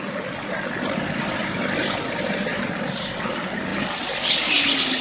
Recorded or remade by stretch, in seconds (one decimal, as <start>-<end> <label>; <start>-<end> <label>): 0.0-5.0 recorded